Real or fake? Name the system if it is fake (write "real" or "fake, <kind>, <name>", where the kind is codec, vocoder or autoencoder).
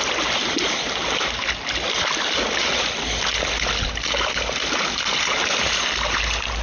real